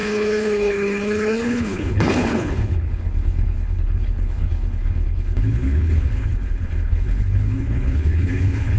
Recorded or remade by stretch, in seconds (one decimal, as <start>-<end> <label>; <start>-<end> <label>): 0.0-8.8 remade